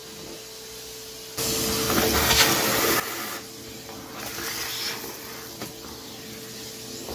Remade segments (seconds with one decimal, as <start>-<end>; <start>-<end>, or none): none